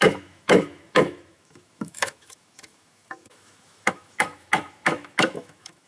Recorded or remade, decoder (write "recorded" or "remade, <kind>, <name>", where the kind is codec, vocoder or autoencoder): remade, autoencoder, DAC-VAE